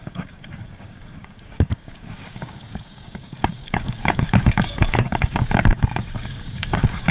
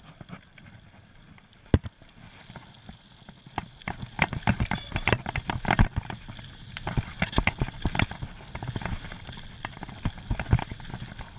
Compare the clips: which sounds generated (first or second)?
first